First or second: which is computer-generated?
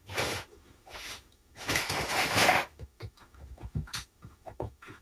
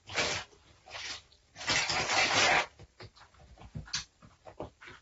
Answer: first